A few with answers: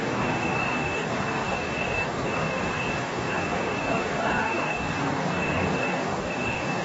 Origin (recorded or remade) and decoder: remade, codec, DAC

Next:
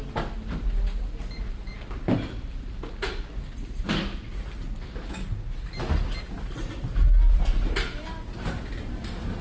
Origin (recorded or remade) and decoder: recorded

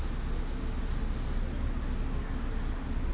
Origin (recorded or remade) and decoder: recorded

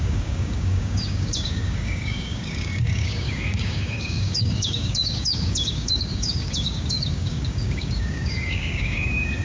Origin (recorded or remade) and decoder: remade, codec, DAC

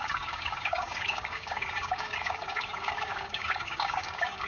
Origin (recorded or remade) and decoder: remade, codec, DAC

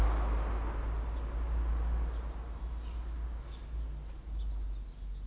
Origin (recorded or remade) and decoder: recorded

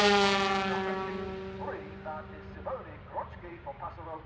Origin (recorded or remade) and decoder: recorded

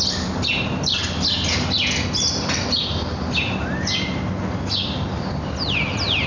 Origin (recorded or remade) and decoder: recorded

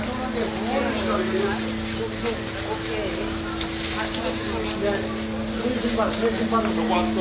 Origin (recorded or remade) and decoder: recorded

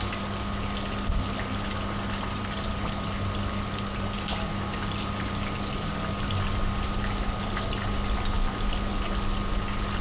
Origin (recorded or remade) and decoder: recorded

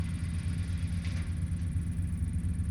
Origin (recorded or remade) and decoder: recorded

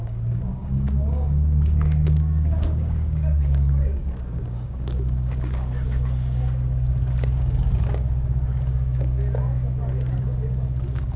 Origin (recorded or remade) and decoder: remade, codec, DAC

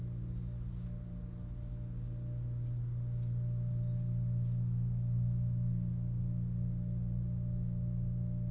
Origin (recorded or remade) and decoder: recorded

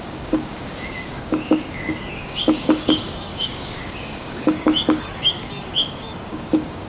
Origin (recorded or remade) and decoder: remade, codec, DAC